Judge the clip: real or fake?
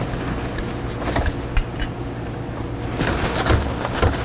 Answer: real